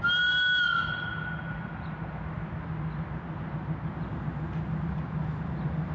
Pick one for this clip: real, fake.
real